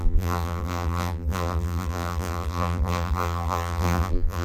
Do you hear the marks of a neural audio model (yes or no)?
yes